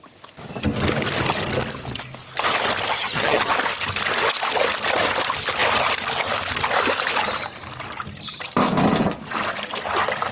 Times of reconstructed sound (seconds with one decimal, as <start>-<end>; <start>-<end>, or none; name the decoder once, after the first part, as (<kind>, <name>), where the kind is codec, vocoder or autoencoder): 2.9-3.5 (vocoder, HiFi-GAN)